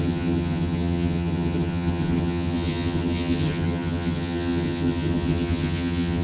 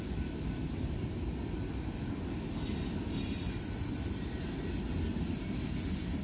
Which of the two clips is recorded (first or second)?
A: second